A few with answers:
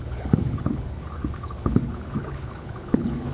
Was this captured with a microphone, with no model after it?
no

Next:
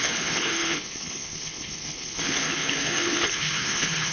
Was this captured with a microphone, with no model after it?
no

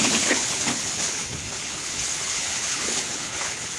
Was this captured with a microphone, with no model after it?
no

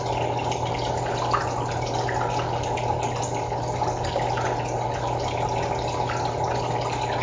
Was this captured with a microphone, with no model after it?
yes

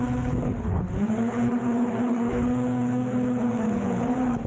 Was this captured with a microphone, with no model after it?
no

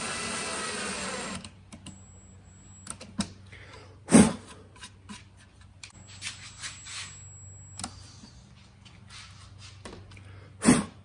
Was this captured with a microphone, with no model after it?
yes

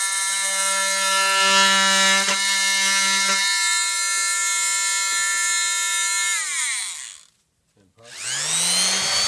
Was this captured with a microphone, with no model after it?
yes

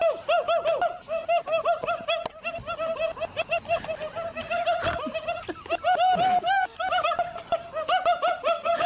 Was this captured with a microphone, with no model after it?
yes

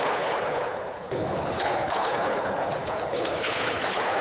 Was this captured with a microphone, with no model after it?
no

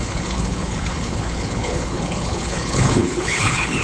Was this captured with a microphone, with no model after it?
no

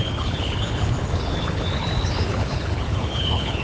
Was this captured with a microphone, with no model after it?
no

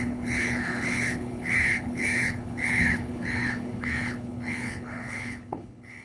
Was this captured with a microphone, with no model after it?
no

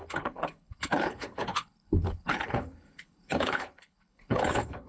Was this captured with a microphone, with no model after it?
no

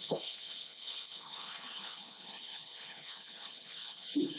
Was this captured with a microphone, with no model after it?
no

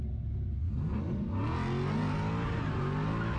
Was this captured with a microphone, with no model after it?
yes